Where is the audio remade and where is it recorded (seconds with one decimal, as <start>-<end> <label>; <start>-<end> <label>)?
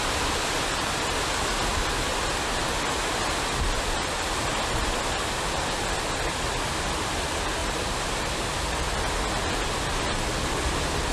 0.0-7.6 recorded; 7.6-8.8 remade; 8.8-11.1 recorded